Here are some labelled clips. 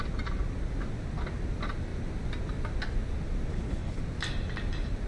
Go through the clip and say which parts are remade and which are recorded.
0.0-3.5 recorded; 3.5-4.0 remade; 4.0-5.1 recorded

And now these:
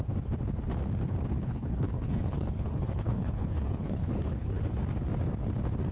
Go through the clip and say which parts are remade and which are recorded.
0.0-1.3 recorded; 1.3-4.6 remade; 4.6-5.9 recorded

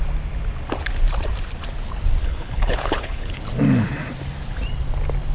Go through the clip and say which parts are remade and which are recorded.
0.0-2.2 recorded; 2.2-3.4 remade; 3.4-5.3 recorded

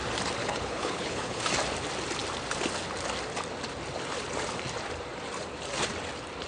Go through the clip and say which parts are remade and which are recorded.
0.0-0.4 recorded; 0.4-1.4 remade; 1.4-6.5 recorded

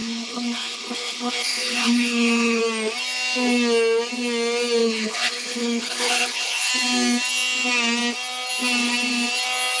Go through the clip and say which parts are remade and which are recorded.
0.0-2.6 remade; 2.6-4.8 recorded; 4.8-6.7 remade; 6.7-9.8 recorded

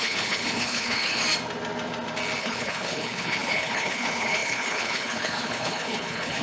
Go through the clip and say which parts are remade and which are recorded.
0.0-1.2 remade; 1.2-2.4 recorded; 2.4-6.4 remade